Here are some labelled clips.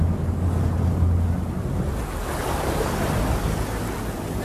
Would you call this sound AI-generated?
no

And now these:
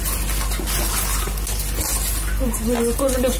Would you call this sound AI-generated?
no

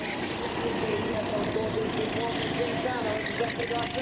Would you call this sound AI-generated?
no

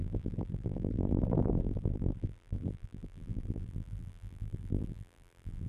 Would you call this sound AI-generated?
yes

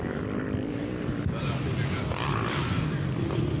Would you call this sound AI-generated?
yes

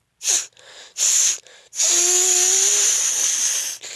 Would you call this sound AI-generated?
no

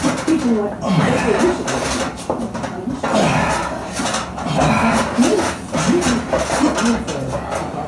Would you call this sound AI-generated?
no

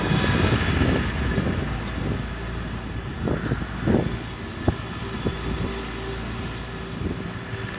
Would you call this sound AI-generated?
no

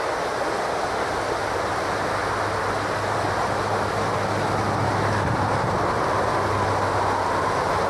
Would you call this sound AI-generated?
no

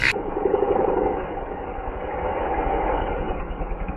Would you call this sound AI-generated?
yes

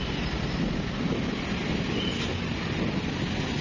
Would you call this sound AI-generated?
no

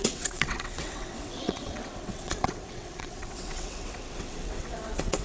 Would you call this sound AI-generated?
yes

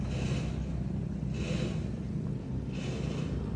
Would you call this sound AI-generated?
no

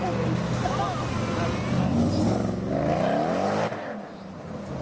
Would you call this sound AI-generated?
no